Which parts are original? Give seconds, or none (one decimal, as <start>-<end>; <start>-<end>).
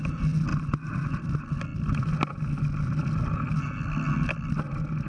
0.0-5.1